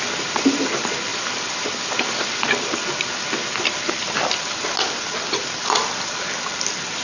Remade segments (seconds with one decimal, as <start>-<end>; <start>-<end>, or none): none